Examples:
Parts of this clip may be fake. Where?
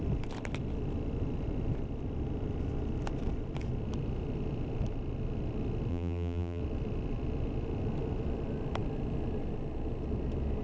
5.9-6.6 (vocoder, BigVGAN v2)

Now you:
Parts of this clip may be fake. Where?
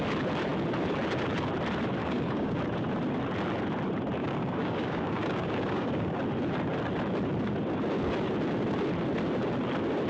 2.0-2.6 (codec, DAC); 4.2-6.2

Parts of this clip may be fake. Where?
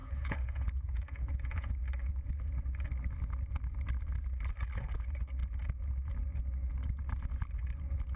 0.0-1.7 (vocoder, Vocos)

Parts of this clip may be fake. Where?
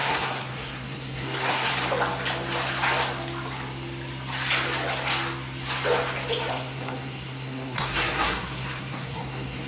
0.0-1.7 (codec, SNAC); 6.5-9.7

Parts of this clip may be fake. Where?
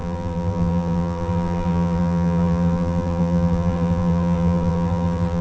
0.0-5.4 (vocoder, BigVGAN v2)